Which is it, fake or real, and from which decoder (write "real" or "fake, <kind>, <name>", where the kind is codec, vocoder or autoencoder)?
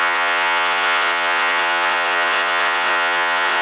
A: fake, vocoder, WaveNeXt